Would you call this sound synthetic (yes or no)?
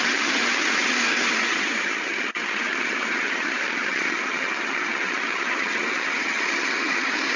yes